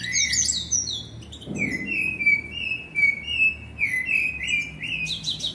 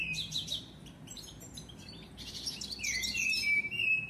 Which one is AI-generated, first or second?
second